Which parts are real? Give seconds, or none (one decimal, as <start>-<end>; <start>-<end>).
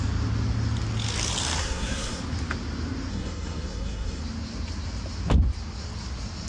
0.0-1.6; 2.2-3.1; 4.2-6.5